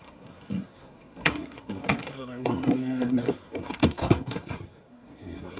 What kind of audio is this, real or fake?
fake